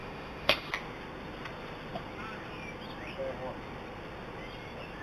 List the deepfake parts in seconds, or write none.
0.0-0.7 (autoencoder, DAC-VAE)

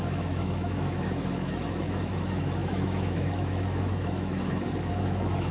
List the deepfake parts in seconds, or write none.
0.0-5.5 (autoencoder, DAC-VAE)

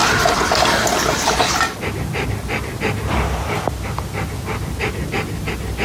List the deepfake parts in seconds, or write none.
none

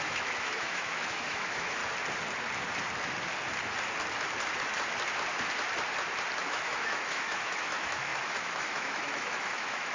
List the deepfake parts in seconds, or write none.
0.0-1.8 (autoencoder, DAC-VAE); 6.4-9.9

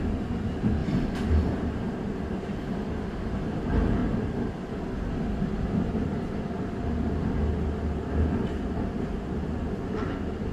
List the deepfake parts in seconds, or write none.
none

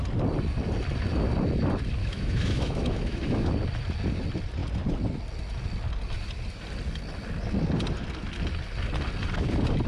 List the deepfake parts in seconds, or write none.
2.0-3.5 (autoencoder, DAC-VAE)

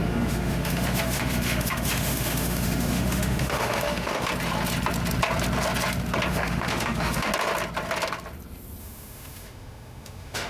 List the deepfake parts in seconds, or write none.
0.0-4.3 (autoencoder, DAC-VAE); 6.3-7.3; 8.8-10.5